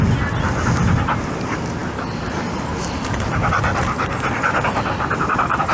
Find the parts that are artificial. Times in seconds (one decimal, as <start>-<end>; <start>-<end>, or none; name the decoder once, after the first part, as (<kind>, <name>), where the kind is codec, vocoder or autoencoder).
none